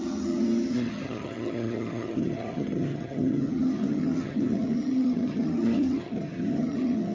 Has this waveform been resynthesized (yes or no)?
yes